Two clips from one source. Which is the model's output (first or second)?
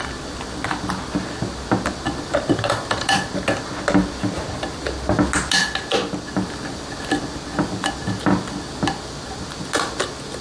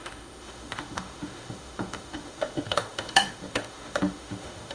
second